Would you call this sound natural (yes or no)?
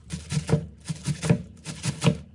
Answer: yes